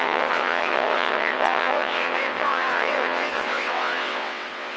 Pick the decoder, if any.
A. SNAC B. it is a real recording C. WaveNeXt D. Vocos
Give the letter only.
C